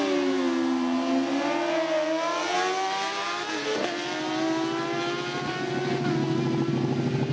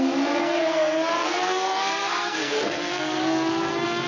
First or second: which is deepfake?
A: second